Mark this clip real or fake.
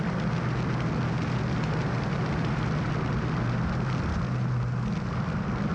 real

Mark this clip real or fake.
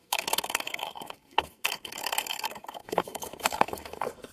fake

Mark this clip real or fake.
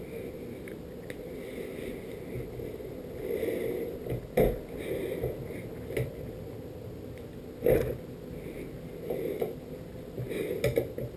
real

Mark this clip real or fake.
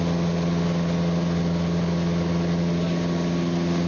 real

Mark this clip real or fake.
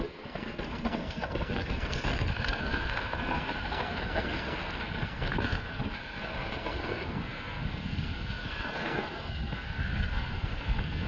fake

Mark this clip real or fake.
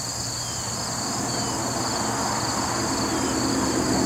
real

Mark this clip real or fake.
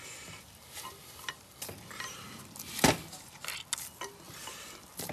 real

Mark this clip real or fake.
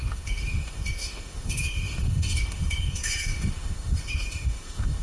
fake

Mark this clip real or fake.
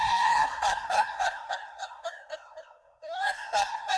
fake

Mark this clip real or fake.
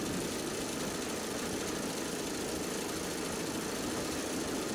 real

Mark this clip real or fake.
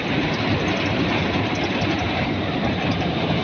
real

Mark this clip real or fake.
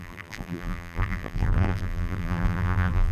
fake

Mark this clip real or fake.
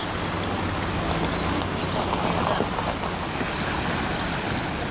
real